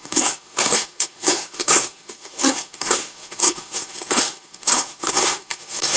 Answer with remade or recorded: remade